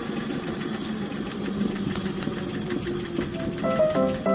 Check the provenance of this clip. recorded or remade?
recorded